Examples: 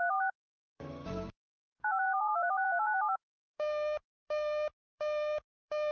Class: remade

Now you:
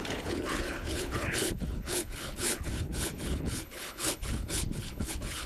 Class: remade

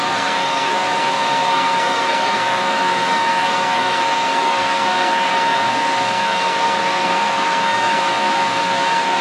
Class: remade